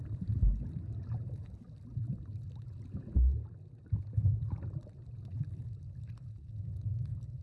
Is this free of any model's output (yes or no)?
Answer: yes